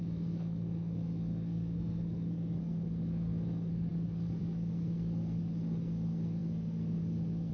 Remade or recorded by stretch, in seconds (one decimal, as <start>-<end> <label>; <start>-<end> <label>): 0.0-7.5 remade